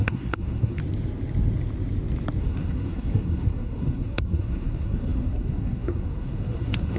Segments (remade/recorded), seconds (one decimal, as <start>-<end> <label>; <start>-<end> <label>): 0.0-0.8 remade; 0.8-2.4 recorded; 2.4-7.0 remade